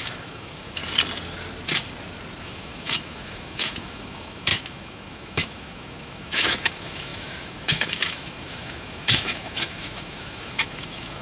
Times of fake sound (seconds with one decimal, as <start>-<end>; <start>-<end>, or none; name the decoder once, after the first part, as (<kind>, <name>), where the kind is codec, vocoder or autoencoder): 0.0-0.8 (autoencoder, DAC-VAE); 2.4-11.2

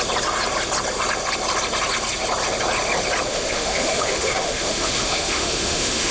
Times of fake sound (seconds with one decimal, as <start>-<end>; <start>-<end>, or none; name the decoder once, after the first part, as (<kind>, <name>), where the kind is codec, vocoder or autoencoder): 3.3-6.1 (autoencoder, DAC-VAE)

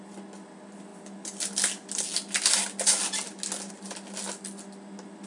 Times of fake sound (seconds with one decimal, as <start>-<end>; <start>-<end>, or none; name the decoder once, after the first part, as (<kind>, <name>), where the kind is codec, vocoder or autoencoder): none

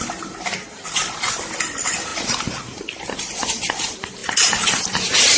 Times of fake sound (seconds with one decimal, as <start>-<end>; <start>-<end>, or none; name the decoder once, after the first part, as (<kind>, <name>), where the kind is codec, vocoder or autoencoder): none